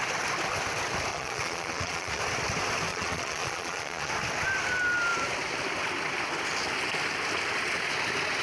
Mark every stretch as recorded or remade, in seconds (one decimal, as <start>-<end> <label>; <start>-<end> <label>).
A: 0.0-1.1 recorded; 1.1-2.2 remade; 2.2-2.9 recorded; 2.9-4.1 remade; 4.1-8.4 recorded